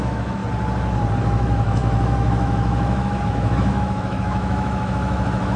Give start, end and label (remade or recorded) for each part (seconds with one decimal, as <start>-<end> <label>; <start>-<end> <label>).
0.0-0.4 remade; 0.4-1.2 recorded; 1.2-5.6 remade